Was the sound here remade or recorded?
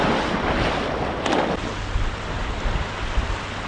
recorded